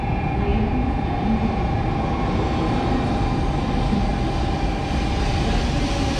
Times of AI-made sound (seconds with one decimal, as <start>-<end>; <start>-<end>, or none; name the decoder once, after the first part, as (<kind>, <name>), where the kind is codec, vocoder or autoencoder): none